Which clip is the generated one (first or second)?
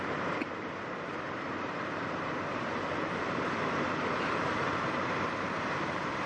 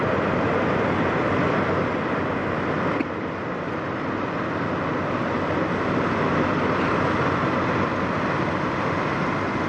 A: first